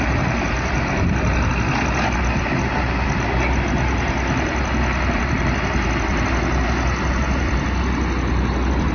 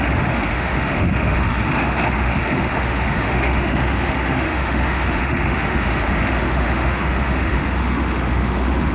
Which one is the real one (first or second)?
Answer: first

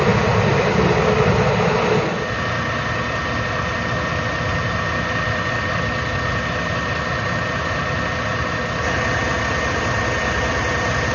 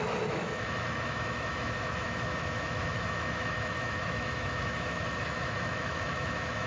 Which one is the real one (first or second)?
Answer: first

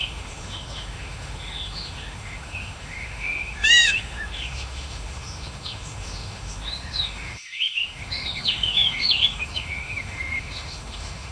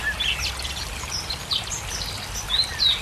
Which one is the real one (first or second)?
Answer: second